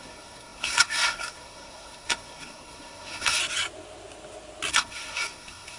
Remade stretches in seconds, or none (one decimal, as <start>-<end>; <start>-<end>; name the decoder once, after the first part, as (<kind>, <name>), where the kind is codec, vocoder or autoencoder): 0.0-3.4 (codec, SNAC); 4.7-5.8